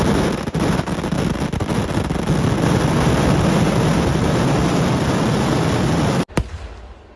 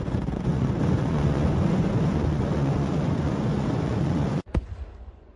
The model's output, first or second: second